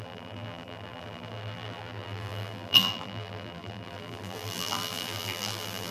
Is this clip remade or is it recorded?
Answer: remade